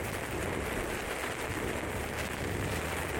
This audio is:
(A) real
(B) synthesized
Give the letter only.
A